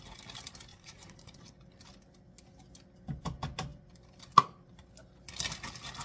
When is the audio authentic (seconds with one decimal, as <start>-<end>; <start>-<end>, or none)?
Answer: 0.0-0.7; 1.5-6.0